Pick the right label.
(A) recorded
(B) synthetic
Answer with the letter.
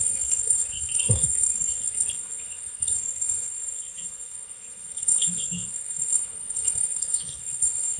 B